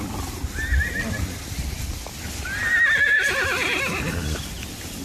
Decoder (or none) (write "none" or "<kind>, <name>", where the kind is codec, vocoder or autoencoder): none